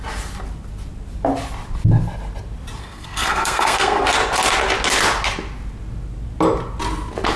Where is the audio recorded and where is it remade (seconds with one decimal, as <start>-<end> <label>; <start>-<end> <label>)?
0.0-2.8 recorded; 2.8-4.0 remade; 4.0-7.4 recorded